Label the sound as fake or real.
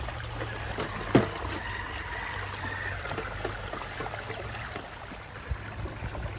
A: real